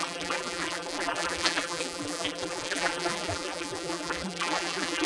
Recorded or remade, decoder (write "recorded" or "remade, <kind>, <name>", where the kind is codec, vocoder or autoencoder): remade, vocoder, BigVGAN v2